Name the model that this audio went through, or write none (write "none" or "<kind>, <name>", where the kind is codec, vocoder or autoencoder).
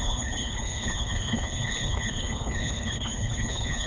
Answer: codec, HILCodec